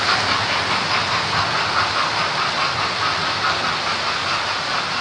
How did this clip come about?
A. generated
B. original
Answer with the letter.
B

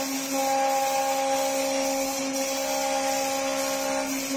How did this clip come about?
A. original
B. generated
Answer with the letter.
A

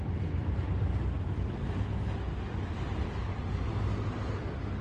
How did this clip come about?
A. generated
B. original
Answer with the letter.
B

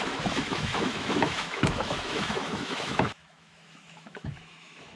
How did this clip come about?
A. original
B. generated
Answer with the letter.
B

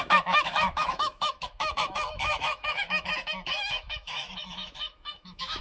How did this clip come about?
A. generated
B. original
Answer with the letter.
A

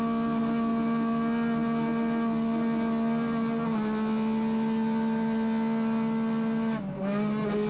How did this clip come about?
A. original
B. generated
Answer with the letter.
A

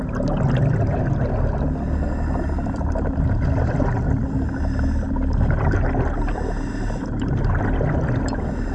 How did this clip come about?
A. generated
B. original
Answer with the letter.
B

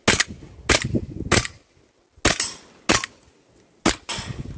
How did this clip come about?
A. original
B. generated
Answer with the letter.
A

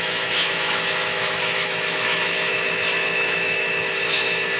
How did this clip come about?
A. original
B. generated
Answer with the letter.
B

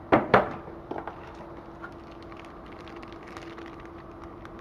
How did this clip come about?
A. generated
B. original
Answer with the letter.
B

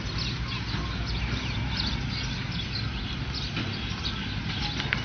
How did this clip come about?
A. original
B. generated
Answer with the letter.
A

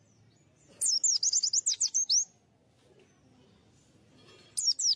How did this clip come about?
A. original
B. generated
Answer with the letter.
A